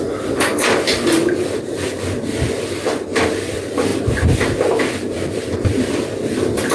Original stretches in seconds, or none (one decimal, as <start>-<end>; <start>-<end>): 0.0-6.7